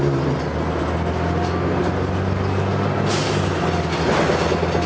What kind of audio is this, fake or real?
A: real